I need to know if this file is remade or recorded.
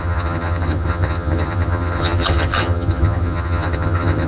remade